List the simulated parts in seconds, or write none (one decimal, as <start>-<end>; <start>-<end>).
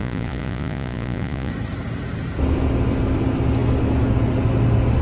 0.0-1.5